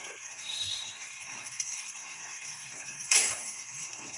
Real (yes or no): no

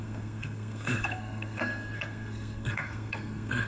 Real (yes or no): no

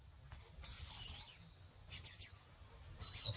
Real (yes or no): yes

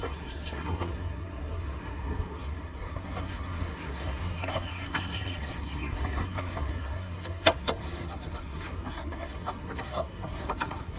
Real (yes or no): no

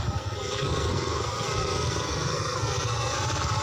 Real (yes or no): no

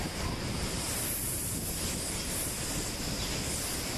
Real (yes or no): yes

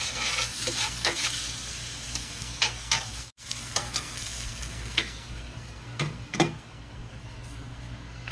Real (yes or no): no